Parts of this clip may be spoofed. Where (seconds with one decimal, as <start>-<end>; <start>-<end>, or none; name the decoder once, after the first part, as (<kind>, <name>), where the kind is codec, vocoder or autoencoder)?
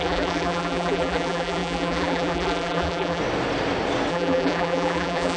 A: 0.0-3.2 (vocoder, BigVGAN v2); 4.1-5.4